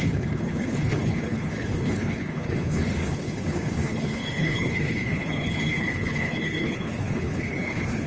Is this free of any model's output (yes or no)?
no